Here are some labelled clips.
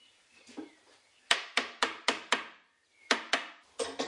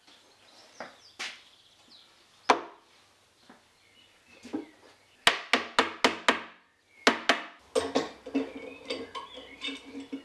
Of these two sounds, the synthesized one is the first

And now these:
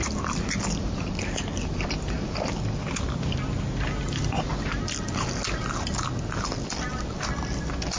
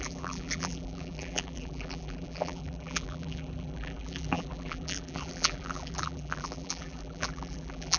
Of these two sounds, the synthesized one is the second